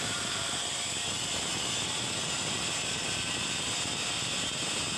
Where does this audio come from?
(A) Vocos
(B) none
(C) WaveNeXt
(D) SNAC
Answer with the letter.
B